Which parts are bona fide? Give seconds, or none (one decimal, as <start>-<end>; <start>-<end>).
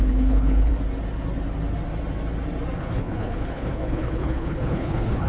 0.7-2.8